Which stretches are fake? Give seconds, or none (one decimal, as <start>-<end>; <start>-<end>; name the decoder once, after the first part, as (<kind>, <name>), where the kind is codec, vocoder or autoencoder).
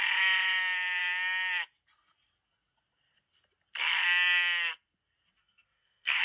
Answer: 5.4-6.2 (codec, SNAC)